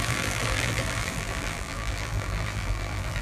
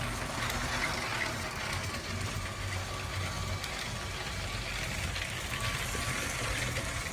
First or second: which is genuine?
second